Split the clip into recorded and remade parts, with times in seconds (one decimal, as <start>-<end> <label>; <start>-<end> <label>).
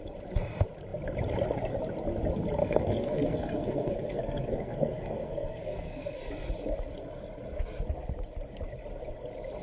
0.0-2.6 recorded; 2.6-6.3 remade; 6.3-9.6 recorded